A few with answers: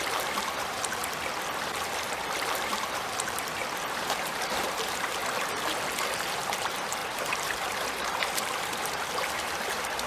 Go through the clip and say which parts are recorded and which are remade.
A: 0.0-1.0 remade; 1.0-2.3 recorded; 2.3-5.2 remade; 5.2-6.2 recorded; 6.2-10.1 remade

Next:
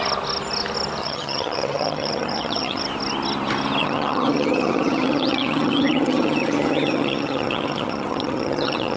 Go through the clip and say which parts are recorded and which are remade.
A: 0.0-1.0 recorded; 1.0-2.8 remade; 2.8-3.8 recorded; 3.8-9.0 remade

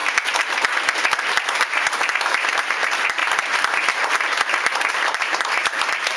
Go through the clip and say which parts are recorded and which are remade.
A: 0.0-1.9 recorded; 1.9-3.2 remade; 3.2-4.9 recorded; 4.9-6.2 remade

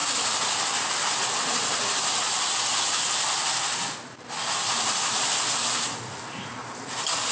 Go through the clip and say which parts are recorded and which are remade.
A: 0.0-7.3 recorded

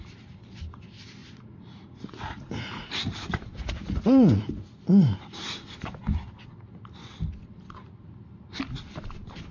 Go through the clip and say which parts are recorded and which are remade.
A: 0.0-1.2 recorded; 1.2-4.5 remade; 4.5-9.5 recorded

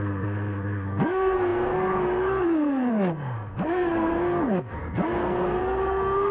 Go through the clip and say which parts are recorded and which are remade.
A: 0.0-6.3 remade

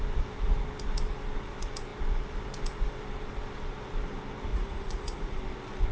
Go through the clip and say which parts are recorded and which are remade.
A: 0.0-4.5 recorded; 4.5-5.4 remade; 5.4-5.9 recorded

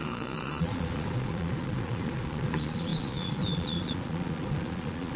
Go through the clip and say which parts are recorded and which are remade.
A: 0.0-5.2 remade